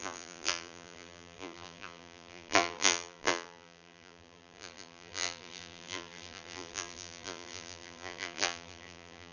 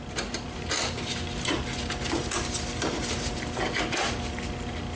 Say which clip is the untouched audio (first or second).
second